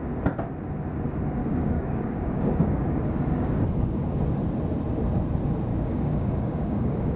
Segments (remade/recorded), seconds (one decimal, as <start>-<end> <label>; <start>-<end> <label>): 0.0-1.4 recorded; 1.4-4.2 remade; 4.2-5.7 recorded; 5.7-7.2 remade